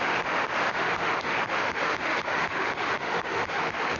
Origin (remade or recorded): remade